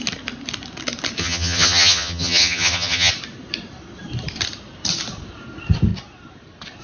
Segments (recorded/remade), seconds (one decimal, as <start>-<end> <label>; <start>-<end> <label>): 0.0-1.2 recorded; 1.2-3.1 remade; 3.1-6.8 recorded